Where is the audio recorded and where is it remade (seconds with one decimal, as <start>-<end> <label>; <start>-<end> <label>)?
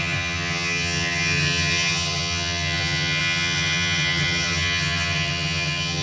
0.0-6.0 remade